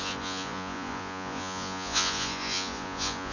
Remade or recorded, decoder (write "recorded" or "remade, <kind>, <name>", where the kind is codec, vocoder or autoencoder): remade, vocoder, Vocos